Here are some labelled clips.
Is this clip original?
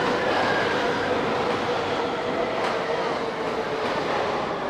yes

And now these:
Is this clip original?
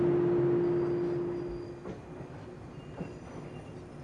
yes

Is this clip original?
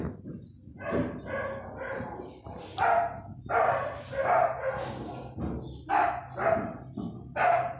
yes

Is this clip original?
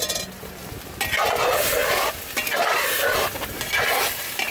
yes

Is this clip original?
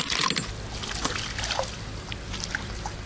yes